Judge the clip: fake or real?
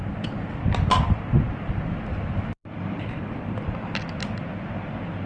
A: real